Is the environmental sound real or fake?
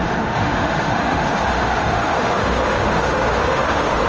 fake